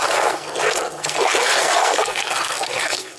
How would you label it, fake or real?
fake